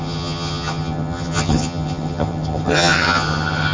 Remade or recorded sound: remade